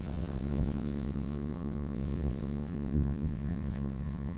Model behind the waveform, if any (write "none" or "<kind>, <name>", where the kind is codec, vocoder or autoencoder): vocoder, WaveNeXt